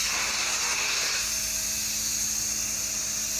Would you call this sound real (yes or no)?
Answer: yes